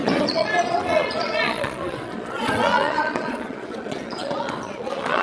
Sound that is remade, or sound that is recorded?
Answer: remade